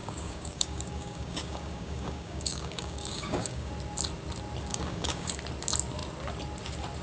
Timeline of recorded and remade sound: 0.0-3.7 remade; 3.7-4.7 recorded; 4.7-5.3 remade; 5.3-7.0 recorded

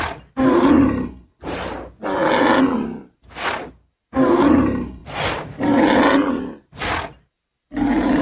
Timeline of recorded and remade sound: 0.0-8.2 recorded